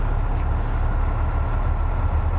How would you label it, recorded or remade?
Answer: recorded